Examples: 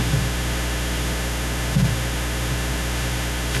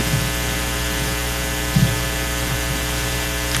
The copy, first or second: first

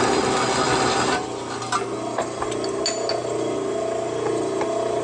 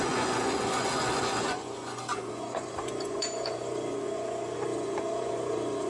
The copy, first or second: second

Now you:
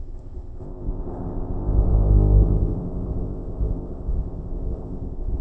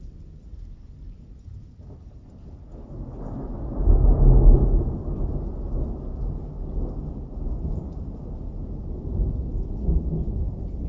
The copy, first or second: first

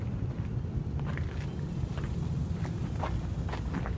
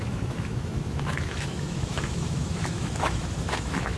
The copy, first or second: second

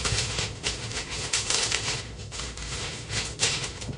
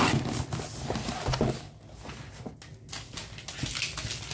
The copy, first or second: first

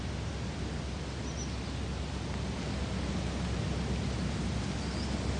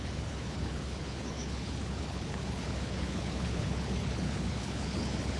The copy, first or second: second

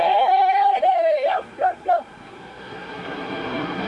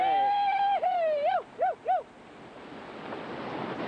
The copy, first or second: first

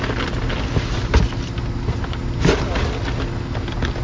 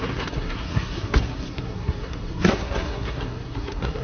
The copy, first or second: second